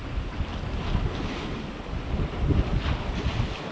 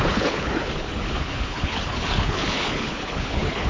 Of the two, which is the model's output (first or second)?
second